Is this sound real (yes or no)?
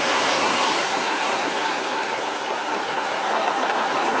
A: no